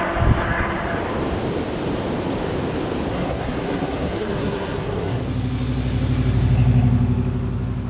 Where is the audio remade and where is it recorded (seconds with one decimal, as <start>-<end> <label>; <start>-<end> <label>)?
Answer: 0.0-3.1 recorded; 3.1-5.2 remade; 5.2-7.9 recorded